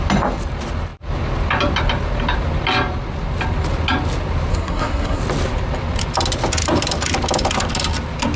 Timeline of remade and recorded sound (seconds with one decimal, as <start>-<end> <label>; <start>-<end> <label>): 0.0-4.5 recorded; 4.5-5.2 remade; 5.2-8.4 recorded